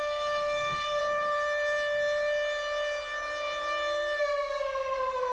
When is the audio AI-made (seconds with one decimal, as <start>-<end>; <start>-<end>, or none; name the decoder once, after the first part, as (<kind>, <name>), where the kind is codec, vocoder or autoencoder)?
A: 0.0-1.0 (codec, SNAC); 4.2-5.3